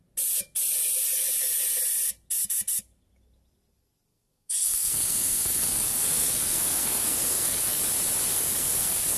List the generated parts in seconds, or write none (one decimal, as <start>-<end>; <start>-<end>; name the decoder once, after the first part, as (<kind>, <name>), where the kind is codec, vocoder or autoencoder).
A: 4.1-7.8 (codec, SNAC); 8.3-9.2